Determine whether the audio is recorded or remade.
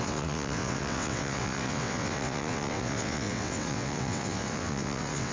remade